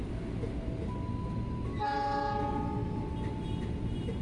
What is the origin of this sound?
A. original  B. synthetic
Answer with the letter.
A